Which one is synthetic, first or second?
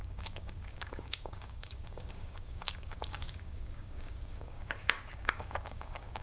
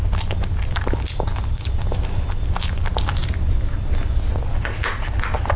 first